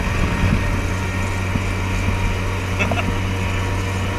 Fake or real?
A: real